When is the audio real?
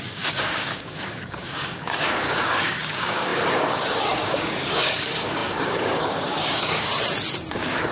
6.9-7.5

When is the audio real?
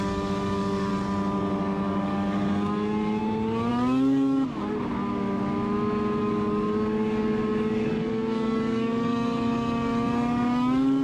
0.9-1.6; 3.2-3.7; 4.6-6.2